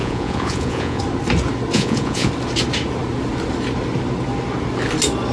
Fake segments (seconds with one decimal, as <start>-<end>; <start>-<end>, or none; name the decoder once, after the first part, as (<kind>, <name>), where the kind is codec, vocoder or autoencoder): 0.0-1.0 (vocoder, Vocos); 1.7-2.3